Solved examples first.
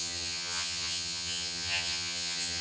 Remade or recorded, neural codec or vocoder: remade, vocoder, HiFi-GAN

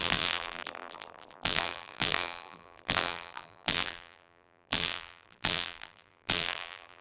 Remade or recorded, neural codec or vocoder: remade, vocoder, BigVGAN v2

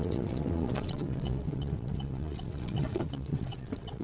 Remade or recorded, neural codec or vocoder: remade, vocoder, WaveNeXt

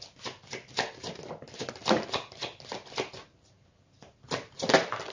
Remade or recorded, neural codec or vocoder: recorded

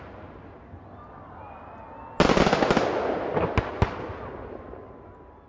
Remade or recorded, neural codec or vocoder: recorded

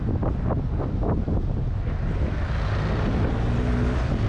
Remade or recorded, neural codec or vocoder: recorded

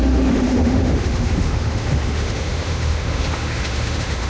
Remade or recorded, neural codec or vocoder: remade, autoencoder, DAC-VAE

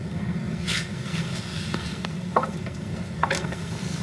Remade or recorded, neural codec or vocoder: remade, codec, SNAC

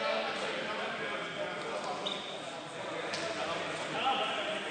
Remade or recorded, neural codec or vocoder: recorded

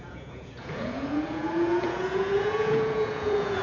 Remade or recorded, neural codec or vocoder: remade, vocoder, Vocos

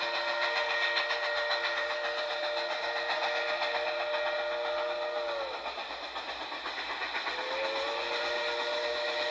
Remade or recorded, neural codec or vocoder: recorded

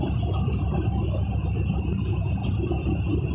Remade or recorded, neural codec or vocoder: recorded